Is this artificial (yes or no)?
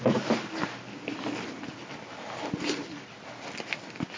no